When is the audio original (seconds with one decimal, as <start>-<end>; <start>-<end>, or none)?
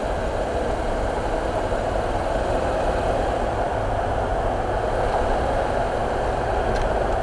3.9-7.2